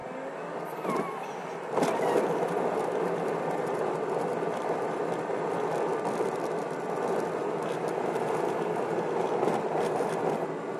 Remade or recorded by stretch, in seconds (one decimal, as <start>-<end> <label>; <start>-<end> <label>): 0.0-10.8 recorded